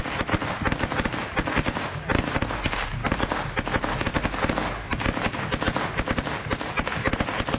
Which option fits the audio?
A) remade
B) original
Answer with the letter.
B